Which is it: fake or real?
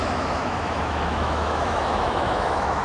fake